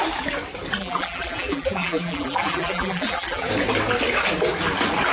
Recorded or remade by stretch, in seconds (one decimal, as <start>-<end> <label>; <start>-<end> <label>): 0.0-0.8 recorded; 0.8-3.5 remade; 3.5-5.1 recorded